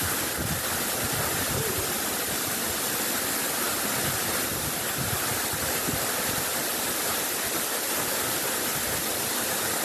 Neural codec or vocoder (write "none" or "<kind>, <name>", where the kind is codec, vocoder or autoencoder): none